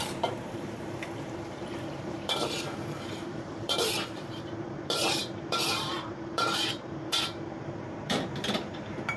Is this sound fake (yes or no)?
yes